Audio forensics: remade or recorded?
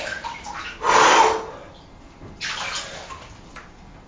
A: recorded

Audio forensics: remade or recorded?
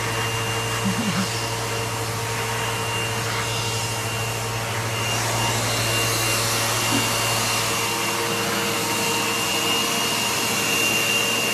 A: recorded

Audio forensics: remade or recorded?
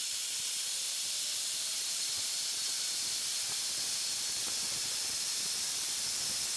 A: recorded